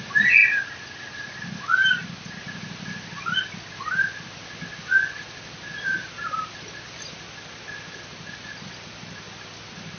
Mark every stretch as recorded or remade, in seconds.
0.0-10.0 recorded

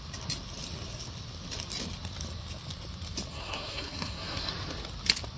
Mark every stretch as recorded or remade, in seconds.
0.0-3.3 recorded; 3.3-4.5 remade; 4.5-5.4 recorded

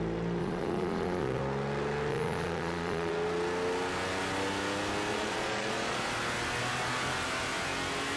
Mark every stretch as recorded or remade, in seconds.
0.0-0.4 recorded; 0.4-1.4 remade; 1.4-2.1 recorded; 2.1-3.1 remade; 3.1-5.1 recorded; 5.1-6.0 remade; 6.0-8.2 recorded

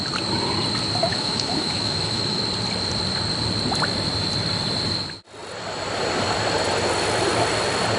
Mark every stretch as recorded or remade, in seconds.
0.0-1.1 recorded; 1.1-2.4 remade; 2.4-8.0 recorded